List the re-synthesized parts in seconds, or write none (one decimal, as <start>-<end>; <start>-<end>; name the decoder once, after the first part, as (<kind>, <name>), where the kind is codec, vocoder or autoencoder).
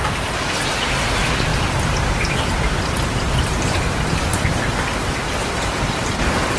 none